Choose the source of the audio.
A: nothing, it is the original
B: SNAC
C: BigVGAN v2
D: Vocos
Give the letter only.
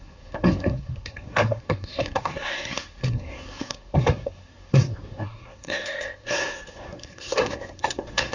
B